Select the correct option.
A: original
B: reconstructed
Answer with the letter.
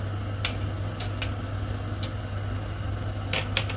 A